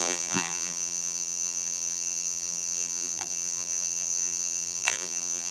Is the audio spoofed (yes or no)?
yes